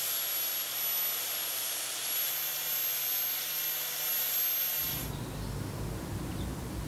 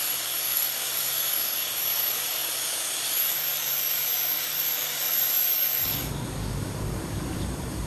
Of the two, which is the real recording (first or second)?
first